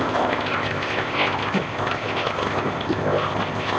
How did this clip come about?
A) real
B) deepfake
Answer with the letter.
B